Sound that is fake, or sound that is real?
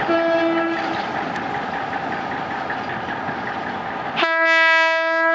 real